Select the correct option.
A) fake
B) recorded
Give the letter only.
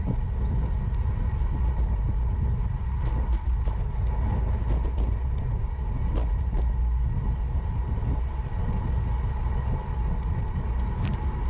B